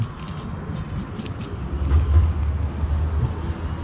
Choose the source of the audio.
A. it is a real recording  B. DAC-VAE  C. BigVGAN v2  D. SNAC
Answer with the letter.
A